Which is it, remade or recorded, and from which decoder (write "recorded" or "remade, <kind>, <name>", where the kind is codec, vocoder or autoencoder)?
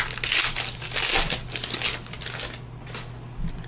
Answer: recorded